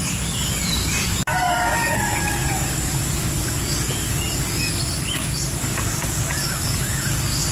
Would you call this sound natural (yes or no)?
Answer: no